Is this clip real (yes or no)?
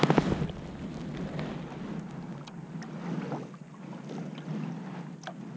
yes